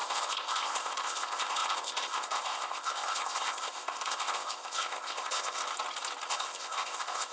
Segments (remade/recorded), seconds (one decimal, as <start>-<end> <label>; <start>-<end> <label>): 0.0-5.6 remade; 5.6-6.3 recorded; 6.3-7.3 remade